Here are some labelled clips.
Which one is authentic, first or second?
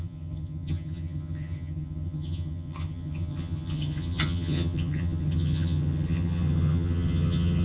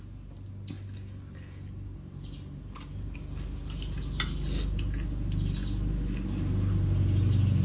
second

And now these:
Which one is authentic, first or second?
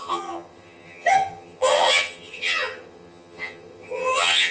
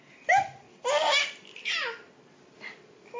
second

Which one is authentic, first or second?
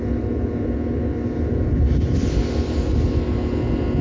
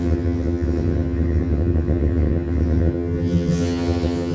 first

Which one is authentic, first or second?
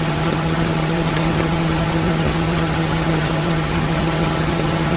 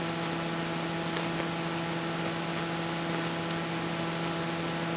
second